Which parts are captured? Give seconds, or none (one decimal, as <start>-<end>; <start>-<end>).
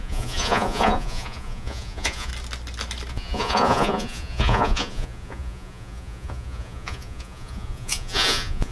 2.3-3.1